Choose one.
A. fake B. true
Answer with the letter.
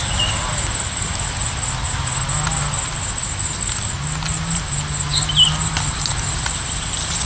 B